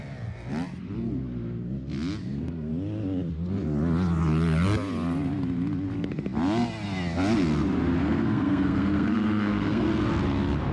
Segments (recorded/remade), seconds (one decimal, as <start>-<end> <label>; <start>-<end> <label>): 0.0-2.2 recorded; 2.2-2.7 remade; 2.7-8.0 recorded; 8.0-9.9 remade; 9.9-10.7 recorded

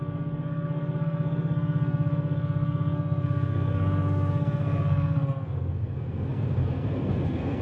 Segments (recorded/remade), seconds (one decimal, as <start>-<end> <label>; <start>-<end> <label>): 0.0-7.6 remade

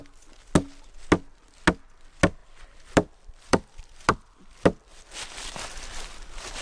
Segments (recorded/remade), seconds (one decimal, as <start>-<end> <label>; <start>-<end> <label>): 0.0-2.4 recorded; 2.4-5.9 remade; 5.9-6.6 recorded

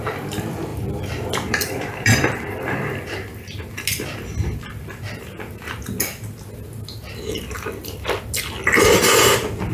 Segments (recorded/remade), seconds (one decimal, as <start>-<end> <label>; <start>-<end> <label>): 0.0-0.7 recorded; 0.7-3.7 remade; 3.7-9.7 recorded

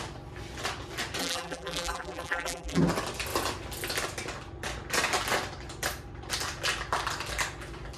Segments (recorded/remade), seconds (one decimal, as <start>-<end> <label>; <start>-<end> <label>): 0.0-1.2 recorded; 1.2-2.8 remade; 2.8-8.0 recorded

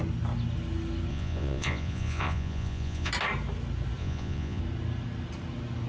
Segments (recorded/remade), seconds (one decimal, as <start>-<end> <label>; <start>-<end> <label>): 0.0-1.1 recorded; 1.1-3.1 remade; 3.1-4.0 recorded; 4.0-4.6 remade; 4.6-5.9 recorded

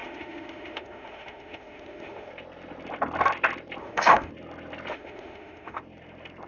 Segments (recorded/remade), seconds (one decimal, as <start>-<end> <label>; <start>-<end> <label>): 0.0-2.3 remade; 2.3-3.8 recorded; 3.8-4.3 remade; 4.3-4.9 recorded; 4.9-5.8 remade; 5.8-6.5 recorded

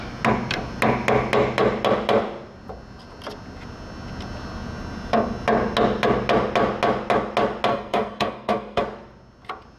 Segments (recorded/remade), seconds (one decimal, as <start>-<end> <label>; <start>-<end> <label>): 0.0-7.7 recorded; 7.7-8.8 remade; 8.8-9.8 recorded